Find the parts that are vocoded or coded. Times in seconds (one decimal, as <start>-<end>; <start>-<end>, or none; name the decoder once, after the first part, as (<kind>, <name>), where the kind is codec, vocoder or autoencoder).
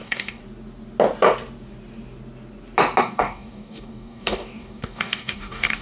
0.0-0.4 (codec, DAC); 3.0-5.8